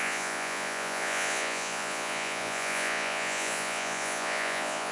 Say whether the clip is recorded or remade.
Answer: remade